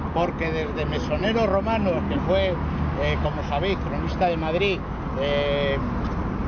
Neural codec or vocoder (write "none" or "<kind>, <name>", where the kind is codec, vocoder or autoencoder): none